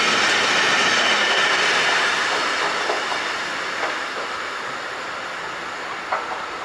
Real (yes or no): yes